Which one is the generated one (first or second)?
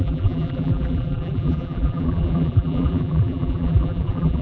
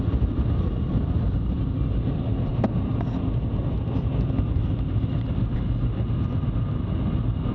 first